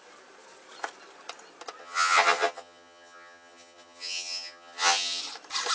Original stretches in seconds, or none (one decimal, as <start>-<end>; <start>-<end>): 0.0-1.8; 5.2-5.7